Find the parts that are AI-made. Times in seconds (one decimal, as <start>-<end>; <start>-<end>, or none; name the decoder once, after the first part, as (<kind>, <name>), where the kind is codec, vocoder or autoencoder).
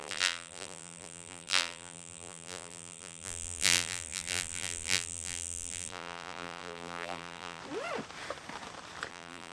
0.0-7.6 (vocoder, BigVGAN v2); 9.1-9.5